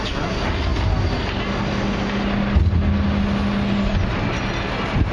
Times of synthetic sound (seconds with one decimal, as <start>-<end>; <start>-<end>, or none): none